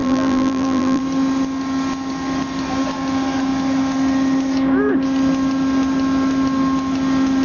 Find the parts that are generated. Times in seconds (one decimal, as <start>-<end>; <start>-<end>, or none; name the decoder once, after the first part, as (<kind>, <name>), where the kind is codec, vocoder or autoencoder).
0.0-1.0 (vocoder, BigVGAN v2)